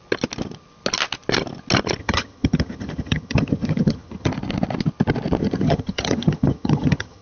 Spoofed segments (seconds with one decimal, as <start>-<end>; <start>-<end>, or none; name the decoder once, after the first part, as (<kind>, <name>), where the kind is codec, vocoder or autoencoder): 2.0-4.3 (vocoder, HiFi-GAN); 5.4-7.2